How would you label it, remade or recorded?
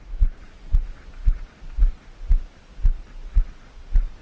recorded